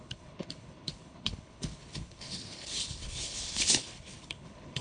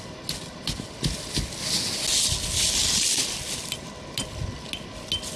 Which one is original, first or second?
second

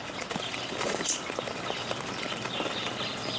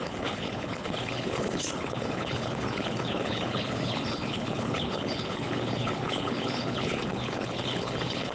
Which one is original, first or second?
first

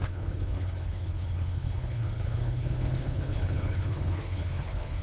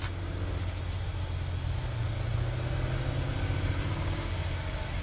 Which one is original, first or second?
second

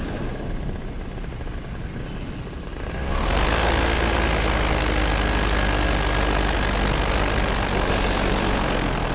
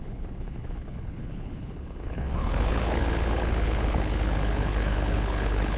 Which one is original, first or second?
first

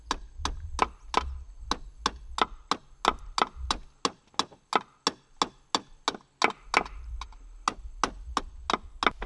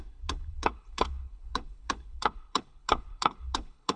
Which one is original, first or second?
first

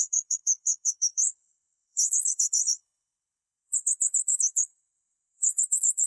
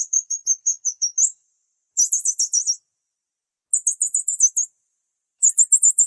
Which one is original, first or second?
second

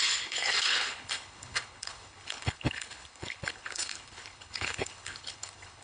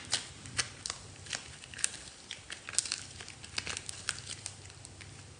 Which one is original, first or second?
second